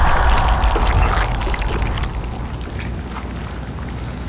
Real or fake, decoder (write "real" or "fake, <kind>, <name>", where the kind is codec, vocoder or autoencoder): real